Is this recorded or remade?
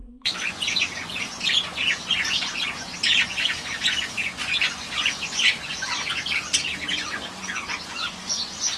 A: remade